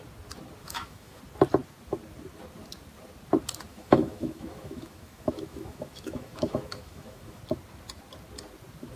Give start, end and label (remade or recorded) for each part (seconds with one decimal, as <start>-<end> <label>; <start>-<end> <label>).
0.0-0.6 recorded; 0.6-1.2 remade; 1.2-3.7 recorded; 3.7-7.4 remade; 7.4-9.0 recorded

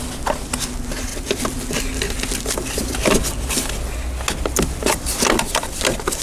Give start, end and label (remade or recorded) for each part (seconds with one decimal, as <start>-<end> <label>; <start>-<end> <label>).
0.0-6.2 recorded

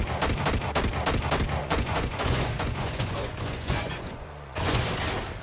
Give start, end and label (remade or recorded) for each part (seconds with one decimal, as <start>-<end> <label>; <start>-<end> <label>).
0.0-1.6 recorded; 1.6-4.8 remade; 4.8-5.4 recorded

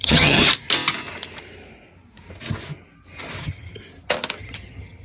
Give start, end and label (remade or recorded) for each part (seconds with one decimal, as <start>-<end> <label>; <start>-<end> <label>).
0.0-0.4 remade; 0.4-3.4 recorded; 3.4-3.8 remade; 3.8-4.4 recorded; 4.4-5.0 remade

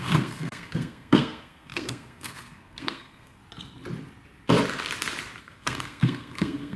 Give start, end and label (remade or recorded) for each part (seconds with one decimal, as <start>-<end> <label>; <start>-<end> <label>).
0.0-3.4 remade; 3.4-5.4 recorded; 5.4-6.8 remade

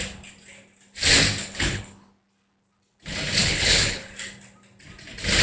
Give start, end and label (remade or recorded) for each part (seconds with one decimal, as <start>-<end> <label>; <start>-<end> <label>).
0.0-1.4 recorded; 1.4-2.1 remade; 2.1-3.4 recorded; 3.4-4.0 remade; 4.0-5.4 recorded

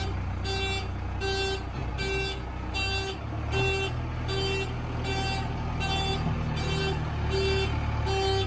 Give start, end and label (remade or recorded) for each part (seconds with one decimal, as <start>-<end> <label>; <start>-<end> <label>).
0.0-8.5 recorded